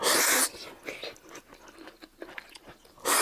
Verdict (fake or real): real